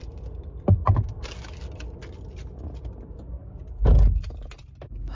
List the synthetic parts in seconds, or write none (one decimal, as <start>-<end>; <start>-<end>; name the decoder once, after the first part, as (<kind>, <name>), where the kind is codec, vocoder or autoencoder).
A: none